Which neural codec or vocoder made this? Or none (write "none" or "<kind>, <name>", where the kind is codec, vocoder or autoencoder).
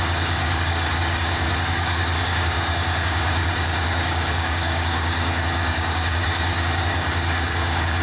codec, DAC